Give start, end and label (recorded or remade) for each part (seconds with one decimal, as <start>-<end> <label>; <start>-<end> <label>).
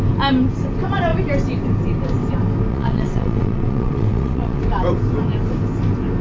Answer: 0.0-2.7 recorded; 2.7-4.6 remade; 4.6-6.2 recorded